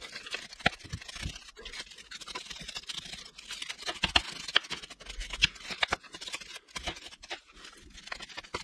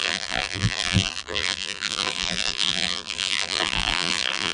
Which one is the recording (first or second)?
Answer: first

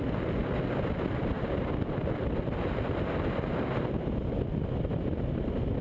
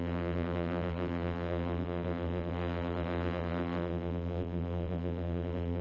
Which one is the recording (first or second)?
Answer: first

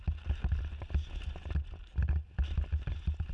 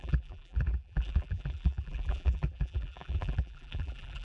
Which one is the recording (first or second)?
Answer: first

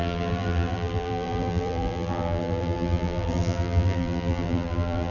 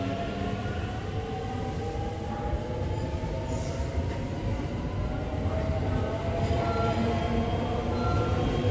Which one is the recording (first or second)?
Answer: second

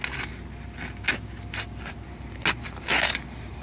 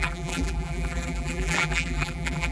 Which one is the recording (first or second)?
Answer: first